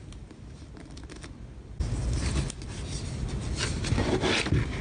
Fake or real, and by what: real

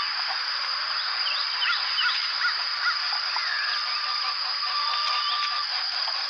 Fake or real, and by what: fake, vocoder, BigVGAN v2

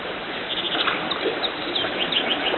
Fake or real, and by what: real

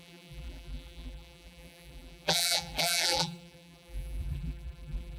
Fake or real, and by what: fake, vocoder, BigVGAN v2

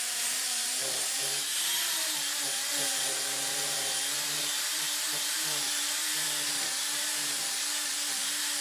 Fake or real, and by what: fake, vocoder, BigVGAN v2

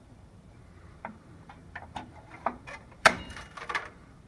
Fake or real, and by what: fake, vocoder, BigVGAN v2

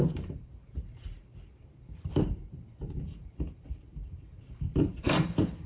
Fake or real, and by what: fake, vocoder, BigVGAN v2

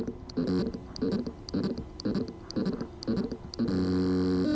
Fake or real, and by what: fake, vocoder, BigVGAN v2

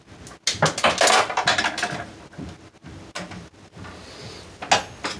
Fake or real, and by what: real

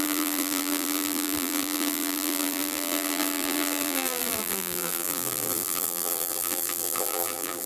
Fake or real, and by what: fake, vocoder, BigVGAN v2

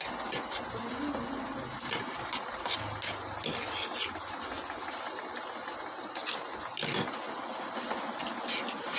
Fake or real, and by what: real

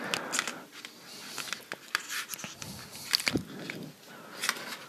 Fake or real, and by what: real